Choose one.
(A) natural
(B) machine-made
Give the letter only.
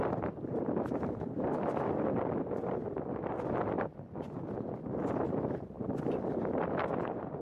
A